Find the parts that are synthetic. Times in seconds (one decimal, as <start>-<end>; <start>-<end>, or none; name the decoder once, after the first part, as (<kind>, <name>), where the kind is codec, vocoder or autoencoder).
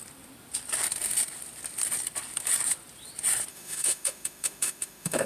3.5-5.3 (autoencoder, DAC-VAE)